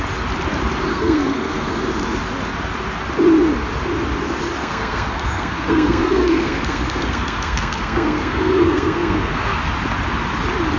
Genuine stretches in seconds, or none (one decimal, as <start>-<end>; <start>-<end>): 0.0-0.9; 1.8-4.6; 9.6-10.8